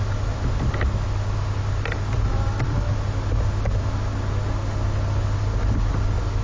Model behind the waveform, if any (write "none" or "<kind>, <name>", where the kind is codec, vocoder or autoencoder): none